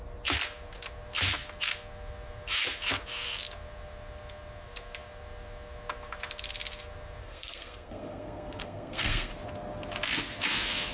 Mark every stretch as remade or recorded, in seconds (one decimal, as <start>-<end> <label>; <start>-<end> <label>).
0.0-7.2 recorded; 7.2-9.3 remade; 9.3-10.9 recorded